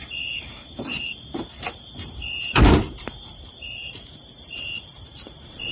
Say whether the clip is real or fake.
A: fake